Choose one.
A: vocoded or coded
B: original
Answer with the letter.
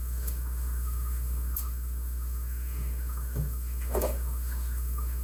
A